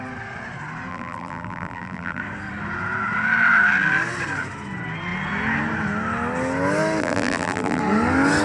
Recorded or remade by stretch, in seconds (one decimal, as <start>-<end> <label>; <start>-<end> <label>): 0.0-0.9 recorded; 0.9-2.2 remade; 2.2-7.0 recorded; 7.0-7.8 remade; 7.8-8.4 recorded

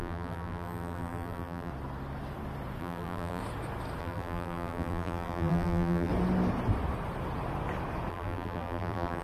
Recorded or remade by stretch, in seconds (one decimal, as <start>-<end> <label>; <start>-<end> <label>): 0.0-1.7 remade; 1.7-2.8 recorded; 2.8-3.4 remade; 3.4-4.0 recorded; 4.0-6.1 remade; 6.1-8.1 recorded; 8.1-9.2 remade

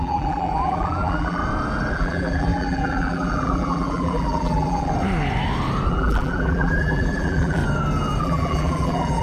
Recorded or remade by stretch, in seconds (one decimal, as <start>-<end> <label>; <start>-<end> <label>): 0.0-1.4 remade; 1.4-1.9 recorded; 1.9-4.9 remade; 4.9-5.9 recorded; 5.9-7.6 remade; 7.6-8.2 recorded; 8.2-9.2 remade

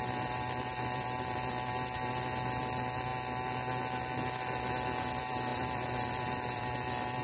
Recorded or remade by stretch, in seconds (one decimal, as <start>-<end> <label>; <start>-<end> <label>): 0.0-3.1 remade; 3.1-5.1 recorded; 5.1-7.2 remade

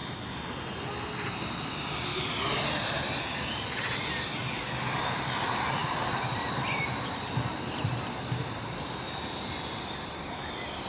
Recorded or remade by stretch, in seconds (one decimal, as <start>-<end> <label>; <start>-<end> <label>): 0.0-5.8 recorded; 5.8-9.4 remade; 9.4-10.9 recorded

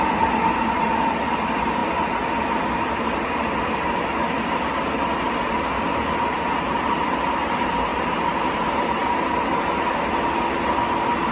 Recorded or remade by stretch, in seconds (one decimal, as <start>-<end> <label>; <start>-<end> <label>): 0.0-11.3 recorded

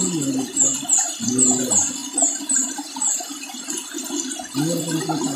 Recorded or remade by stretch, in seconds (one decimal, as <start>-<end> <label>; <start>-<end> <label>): 0.0-5.4 recorded

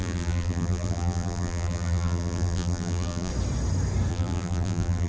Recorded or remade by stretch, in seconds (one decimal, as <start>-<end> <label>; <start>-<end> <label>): 0.0-3.3 remade; 3.3-4.1 recorded; 4.1-5.1 remade